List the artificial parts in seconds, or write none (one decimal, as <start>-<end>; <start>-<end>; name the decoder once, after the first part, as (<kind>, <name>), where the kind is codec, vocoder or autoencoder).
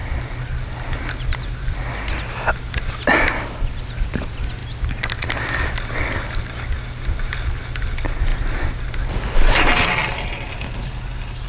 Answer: none